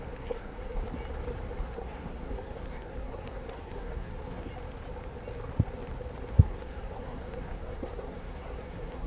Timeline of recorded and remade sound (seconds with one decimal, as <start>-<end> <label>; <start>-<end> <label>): 0.0-0.8 remade; 0.8-1.6 recorded; 1.6-4.5 remade; 4.5-6.3 recorded; 6.3-9.1 remade